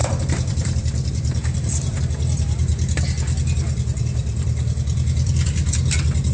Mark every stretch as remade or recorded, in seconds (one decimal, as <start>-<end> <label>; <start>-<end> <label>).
0.0-2.7 remade; 2.7-4.0 recorded; 4.0-5.6 remade; 5.6-6.3 recorded